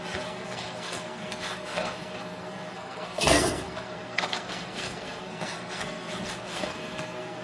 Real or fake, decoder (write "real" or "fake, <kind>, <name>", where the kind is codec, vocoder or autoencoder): fake, codec, SNAC